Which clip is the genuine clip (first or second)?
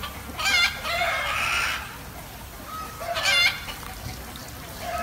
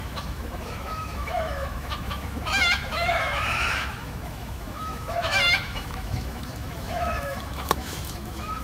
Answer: first